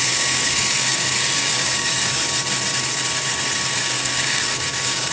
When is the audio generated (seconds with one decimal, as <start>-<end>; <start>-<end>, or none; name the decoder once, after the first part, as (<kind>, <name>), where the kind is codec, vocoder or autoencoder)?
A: 0.0-2.2 (codec, DAC); 3.8-5.1